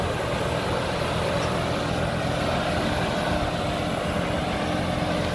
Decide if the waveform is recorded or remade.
recorded